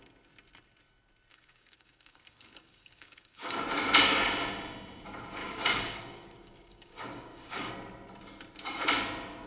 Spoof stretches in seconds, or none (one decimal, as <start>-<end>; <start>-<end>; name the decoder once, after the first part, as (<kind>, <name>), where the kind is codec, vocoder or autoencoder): 1.3-3.6 (codec, DAC); 5.4-7.7